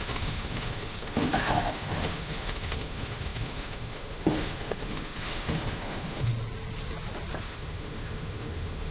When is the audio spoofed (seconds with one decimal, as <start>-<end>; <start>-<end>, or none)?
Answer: 0.0-6.3; 7.4-8.9

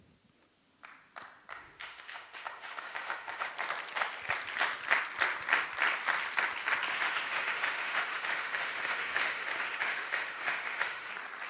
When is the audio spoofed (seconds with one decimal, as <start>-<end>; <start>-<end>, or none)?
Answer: 1.5-3.5; 6.9-11.1

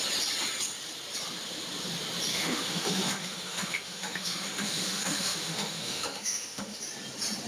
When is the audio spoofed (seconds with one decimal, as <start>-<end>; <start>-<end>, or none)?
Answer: 2.3-6.8

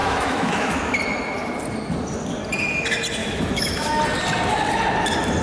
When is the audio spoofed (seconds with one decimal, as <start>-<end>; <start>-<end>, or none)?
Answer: 0.0-1.0; 3.2-4.0

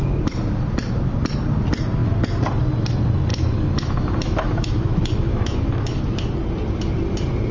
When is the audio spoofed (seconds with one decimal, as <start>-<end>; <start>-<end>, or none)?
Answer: 3.3-6.0

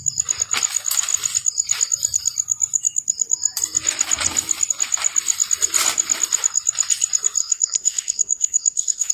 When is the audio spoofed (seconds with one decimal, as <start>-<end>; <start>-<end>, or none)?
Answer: 7.4-9.1

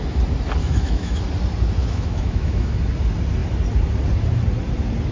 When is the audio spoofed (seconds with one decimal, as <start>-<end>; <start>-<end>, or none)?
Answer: 0.6-1.2; 1.8-2.9